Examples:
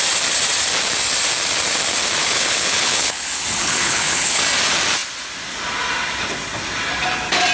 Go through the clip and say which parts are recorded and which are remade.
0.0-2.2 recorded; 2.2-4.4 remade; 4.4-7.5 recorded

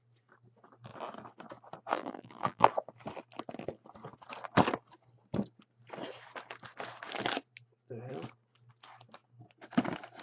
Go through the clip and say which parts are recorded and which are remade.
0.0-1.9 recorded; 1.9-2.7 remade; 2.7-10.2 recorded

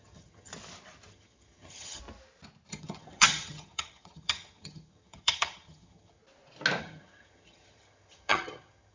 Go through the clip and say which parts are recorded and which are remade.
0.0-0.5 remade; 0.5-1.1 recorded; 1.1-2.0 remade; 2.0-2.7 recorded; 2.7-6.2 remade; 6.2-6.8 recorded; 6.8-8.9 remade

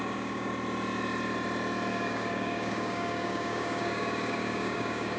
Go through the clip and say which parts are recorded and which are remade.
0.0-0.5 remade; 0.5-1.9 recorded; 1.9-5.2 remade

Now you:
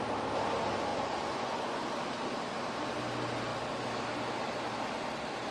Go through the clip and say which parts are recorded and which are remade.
0.0-0.9 recorded; 0.9-1.8 remade; 1.8-5.5 recorded